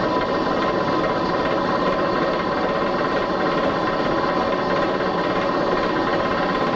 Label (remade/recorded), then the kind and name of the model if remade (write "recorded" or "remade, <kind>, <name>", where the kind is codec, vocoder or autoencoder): recorded